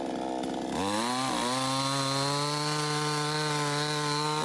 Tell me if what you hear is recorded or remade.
recorded